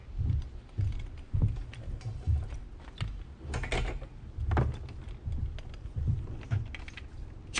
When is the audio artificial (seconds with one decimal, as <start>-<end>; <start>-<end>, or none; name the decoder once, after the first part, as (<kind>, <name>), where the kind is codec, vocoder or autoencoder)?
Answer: none